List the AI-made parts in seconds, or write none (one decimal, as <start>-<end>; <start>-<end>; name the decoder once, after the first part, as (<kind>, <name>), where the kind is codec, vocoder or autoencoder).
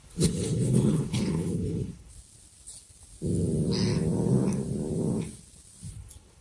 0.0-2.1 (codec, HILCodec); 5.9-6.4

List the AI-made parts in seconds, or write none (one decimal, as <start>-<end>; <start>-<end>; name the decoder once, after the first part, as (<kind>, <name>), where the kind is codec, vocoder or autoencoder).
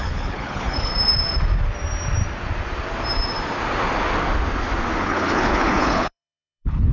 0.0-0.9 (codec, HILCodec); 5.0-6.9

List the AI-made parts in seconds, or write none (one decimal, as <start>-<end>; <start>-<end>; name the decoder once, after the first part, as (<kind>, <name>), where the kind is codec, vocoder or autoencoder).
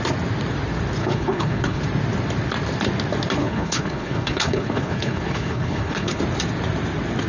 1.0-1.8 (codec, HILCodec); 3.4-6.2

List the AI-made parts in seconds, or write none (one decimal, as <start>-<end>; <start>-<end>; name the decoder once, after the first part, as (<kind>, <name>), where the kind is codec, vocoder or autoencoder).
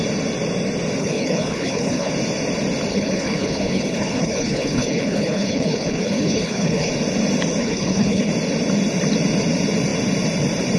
1.0-2.1 (codec, HILCodec); 2.9-6.9; 7.6-8.3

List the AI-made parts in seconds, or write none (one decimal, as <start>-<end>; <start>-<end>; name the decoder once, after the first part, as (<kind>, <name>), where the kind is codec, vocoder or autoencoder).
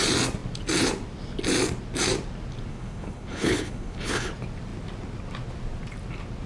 2.7-4.3 (codec, HILCodec)